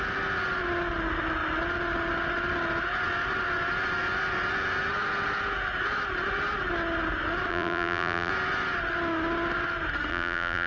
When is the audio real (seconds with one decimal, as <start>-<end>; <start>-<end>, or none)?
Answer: 0.0-7.5; 8.3-10.1